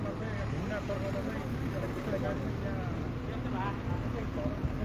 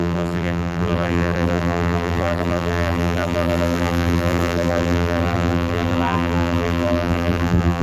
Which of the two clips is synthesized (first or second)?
second